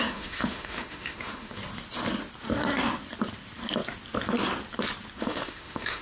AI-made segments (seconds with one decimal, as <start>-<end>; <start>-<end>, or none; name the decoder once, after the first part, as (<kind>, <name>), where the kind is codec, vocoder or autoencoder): 0.0-1.6 (autoencoder, DAC-VAE); 5.2-6.0